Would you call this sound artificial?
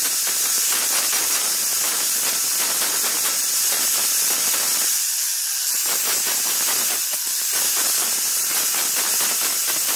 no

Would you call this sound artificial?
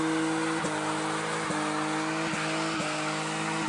no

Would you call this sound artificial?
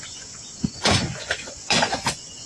yes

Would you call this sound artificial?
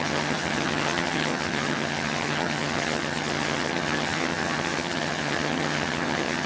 yes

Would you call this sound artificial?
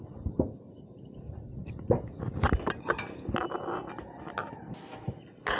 no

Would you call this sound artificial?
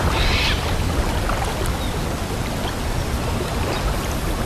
no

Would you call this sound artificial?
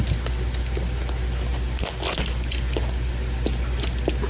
no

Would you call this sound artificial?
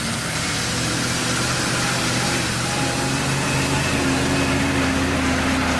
no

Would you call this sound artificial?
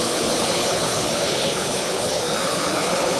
yes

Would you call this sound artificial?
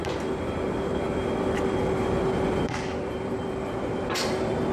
yes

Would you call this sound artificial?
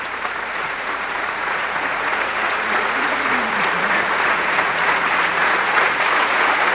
yes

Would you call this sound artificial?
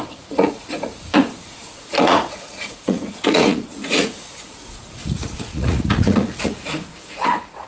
yes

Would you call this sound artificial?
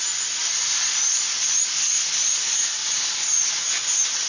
no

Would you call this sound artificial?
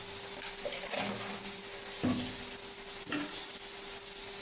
no